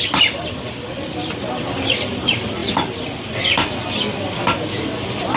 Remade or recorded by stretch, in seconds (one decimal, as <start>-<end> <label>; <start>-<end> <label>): 0.0-5.4 recorded